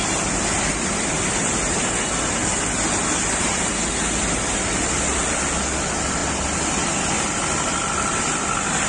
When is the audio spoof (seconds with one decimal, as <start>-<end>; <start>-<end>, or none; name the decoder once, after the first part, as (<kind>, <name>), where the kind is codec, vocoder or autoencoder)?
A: none